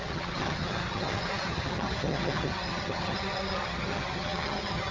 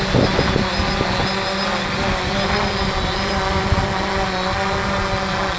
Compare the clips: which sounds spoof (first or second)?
first